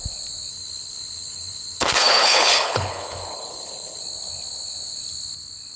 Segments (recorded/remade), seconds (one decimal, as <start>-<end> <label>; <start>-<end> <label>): 0.0-0.5 recorded; 0.5-4.0 remade; 4.0-5.8 recorded